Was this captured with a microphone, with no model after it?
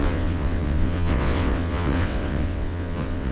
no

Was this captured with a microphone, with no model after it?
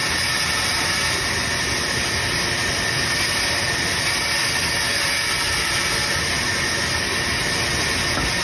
yes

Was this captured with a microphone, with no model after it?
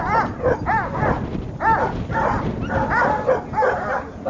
yes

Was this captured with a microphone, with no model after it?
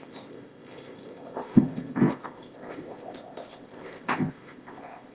no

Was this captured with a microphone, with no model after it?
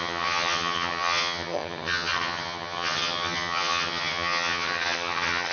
no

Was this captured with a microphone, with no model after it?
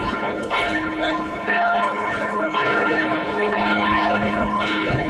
no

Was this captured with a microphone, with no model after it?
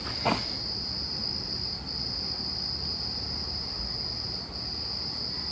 yes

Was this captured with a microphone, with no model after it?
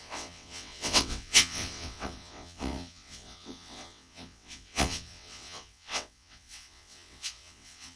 no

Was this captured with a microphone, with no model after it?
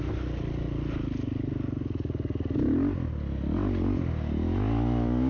yes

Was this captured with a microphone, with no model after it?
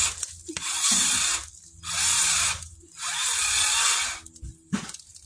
yes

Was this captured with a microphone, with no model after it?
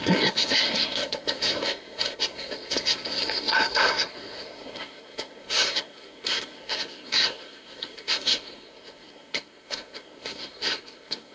no